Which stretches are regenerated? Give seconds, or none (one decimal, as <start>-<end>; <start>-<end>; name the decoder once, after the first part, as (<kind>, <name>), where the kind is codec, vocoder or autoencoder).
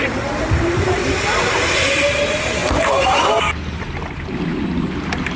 none